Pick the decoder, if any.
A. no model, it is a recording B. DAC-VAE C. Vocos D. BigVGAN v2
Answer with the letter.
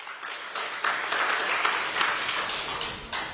A